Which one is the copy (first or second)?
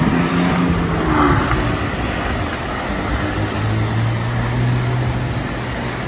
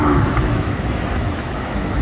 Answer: second